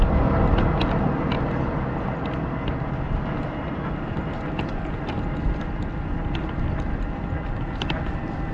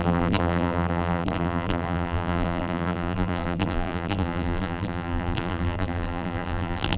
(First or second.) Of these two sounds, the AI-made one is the second